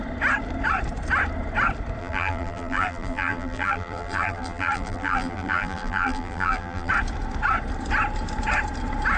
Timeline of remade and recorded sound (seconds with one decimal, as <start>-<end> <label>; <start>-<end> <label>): 0.0-2.0 recorded; 2.0-6.9 remade; 6.9-9.2 recorded